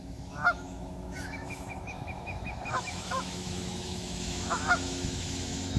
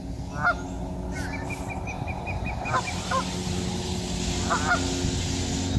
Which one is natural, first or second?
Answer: second